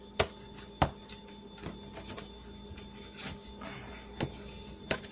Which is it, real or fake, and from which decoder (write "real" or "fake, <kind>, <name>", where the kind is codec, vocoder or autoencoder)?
real